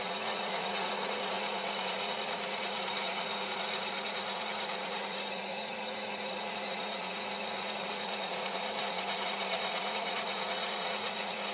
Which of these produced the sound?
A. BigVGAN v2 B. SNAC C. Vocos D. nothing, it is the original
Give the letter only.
C